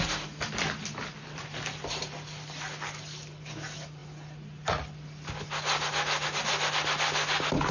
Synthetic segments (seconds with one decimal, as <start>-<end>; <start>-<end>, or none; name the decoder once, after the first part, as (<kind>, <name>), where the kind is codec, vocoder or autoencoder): none